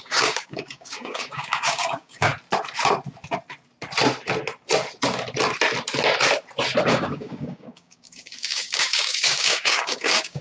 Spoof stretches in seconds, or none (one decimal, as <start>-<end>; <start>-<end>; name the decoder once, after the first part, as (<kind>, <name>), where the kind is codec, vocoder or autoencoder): 0.0-2.3 (codec, DAC); 6.9-10.4